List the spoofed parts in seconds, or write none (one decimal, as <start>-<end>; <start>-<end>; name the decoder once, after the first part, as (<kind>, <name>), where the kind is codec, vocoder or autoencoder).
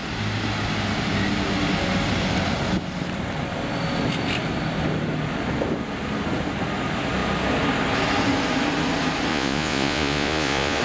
9.3-10.8 (vocoder, Vocos)